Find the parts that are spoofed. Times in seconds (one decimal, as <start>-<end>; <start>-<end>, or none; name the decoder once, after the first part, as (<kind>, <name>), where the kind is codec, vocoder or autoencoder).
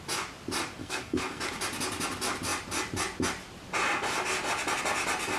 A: 0.8-1.4 (codec, SNAC)